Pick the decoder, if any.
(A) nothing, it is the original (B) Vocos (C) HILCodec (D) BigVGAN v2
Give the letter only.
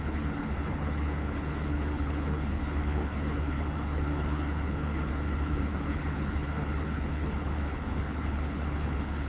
C